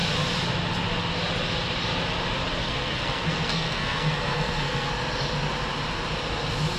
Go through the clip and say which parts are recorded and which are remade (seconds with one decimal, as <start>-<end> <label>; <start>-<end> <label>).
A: 0.0-2.6 recorded; 2.6-4.9 remade; 4.9-6.8 recorded